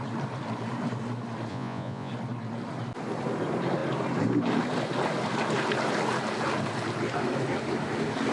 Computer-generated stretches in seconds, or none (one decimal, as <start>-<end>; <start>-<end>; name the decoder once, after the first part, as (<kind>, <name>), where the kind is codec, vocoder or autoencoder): 1.5-2.1 (vocoder, Vocos)